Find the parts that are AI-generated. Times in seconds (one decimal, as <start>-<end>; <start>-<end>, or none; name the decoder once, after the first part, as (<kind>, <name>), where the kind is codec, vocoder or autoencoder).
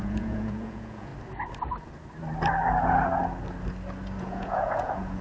0.0-1.1 (vocoder, Vocos); 4.2-5.2